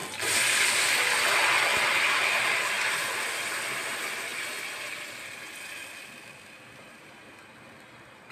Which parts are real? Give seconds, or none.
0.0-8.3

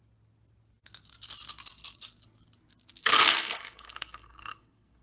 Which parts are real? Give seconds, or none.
0.0-3.0

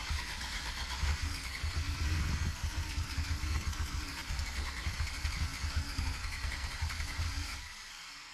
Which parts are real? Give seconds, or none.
none

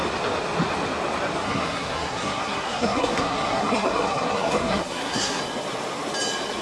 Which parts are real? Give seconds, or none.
0.0-1.4; 5.4-6.6

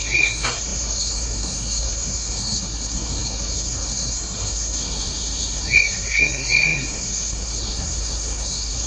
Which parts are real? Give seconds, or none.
none

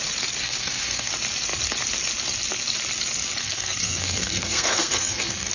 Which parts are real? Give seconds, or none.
0.0-0.4; 1.1-3.4

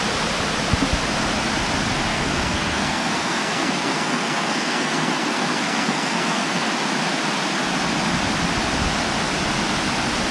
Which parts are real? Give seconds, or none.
0.0-2.1; 6.7-10.3